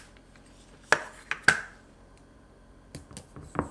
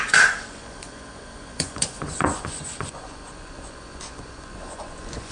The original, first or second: first